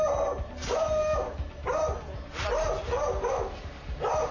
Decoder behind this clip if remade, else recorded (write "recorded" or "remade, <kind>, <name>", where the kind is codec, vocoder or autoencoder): recorded